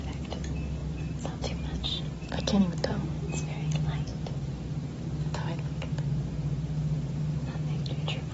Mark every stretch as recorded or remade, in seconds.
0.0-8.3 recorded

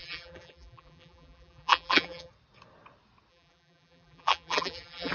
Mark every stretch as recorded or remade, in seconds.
0.0-2.3 remade; 2.3-3.3 recorded; 3.3-5.1 remade

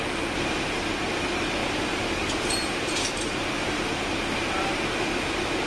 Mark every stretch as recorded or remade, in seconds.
0.0-1.6 recorded; 1.6-4.8 remade; 4.8-5.7 recorded